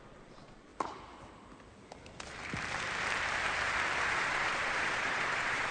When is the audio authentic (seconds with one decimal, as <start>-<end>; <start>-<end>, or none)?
0.7-4.1